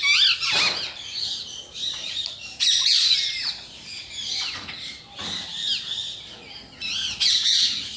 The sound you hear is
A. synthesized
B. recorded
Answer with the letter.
B